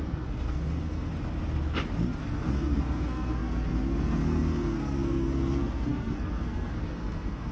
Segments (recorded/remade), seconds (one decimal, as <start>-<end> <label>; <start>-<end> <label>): 0.0-1.1 remade; 1.1-2.2 recorded; 2.2-7.5 remade